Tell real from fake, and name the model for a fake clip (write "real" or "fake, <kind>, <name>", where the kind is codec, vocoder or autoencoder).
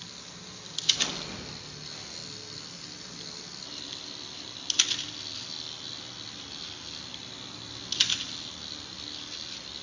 real